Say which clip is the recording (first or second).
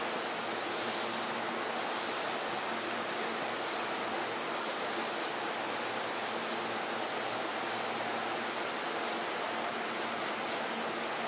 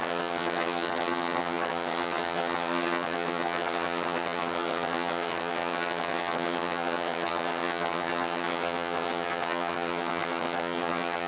first